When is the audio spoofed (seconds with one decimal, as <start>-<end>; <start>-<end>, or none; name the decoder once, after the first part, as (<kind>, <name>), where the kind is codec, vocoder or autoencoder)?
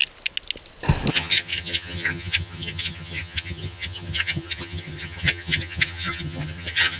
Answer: 1.1-7.0 (vocoder, HiFi-GAN)